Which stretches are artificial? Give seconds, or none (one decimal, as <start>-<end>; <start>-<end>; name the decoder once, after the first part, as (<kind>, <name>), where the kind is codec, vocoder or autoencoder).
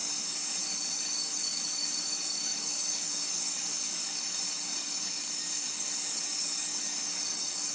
0.0-7.7 (codec, DAC)